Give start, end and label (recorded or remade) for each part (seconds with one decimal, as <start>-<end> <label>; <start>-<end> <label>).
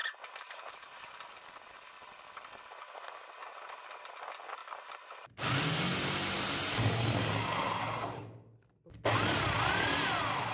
0.0-1.1 remade; 1.1-10.5 recorded